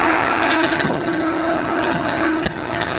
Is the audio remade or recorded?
remade